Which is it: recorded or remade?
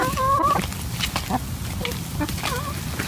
recorded